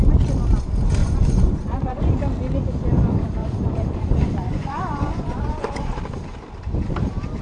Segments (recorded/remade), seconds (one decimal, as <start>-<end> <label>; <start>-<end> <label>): 0.0-1.0 recorded; 1.0-2.0 remade; 2.0-3.4 recorded; 3.4-6.0 remade; 6.0-7.4 recorded